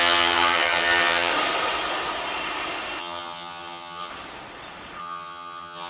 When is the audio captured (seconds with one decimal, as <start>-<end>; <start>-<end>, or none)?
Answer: 1.3-3.0; 4.1-5.0